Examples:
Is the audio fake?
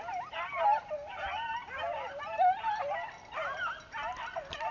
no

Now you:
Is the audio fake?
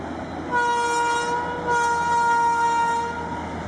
no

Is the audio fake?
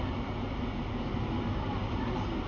no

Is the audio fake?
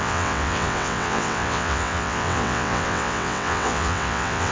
yes